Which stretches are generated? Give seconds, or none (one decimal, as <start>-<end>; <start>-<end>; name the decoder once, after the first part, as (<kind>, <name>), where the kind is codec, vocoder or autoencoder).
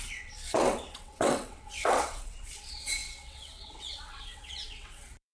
0.0-5.3 (vocoder, WaveNeXt)